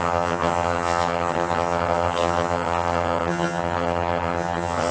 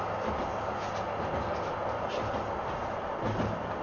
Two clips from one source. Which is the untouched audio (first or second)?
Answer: second